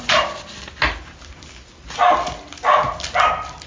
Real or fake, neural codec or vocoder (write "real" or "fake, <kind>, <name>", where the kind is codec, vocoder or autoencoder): real